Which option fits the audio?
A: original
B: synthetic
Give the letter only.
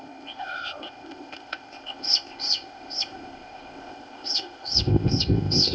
B